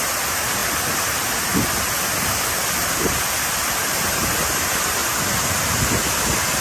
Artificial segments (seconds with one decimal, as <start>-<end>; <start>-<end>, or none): none